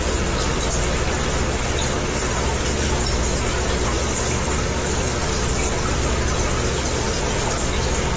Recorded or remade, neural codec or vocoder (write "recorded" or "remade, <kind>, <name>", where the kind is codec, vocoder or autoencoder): recorded